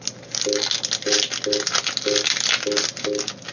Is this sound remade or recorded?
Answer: recorded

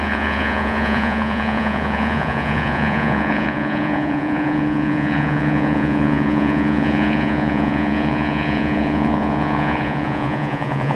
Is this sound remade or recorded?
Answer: remade